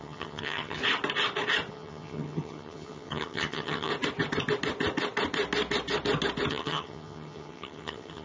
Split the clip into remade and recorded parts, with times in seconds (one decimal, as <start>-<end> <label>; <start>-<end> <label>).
0.0-0.8 remade; 0.8-1.7 recorded; 1.7-3.9 remade; 3.9-6.5 recorded; 6.5-8.2 remade